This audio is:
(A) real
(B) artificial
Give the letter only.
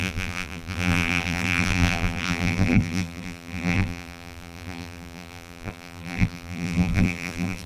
B